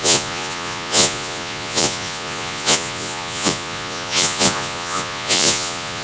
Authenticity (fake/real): fake